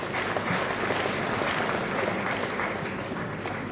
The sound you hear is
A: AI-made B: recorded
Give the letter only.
B